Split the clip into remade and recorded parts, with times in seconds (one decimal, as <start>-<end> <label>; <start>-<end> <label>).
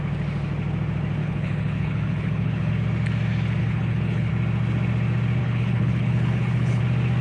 0.0-1.2 recorded; 1.2-2.7 remade; 2.7-3.6 recorded; 3.6-4.3 remade; 4.3-5.4 recorded; 5.4-6.8 remade; 6.8-7.2 recorded